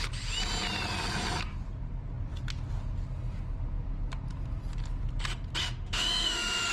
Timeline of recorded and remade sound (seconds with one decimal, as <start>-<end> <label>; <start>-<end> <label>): 0.0-5.6 recorded; 5.6-6.7 remade